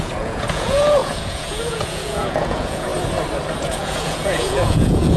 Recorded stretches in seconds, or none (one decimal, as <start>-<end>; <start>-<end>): 2.9-3.6